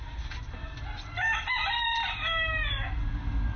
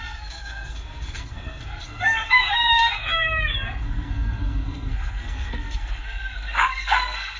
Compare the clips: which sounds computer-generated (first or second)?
second